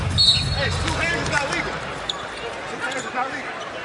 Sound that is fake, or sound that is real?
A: real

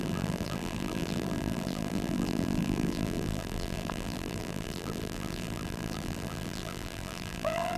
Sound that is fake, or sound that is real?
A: fake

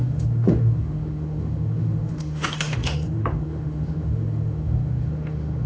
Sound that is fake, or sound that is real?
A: fake